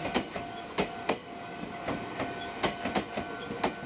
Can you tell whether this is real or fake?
real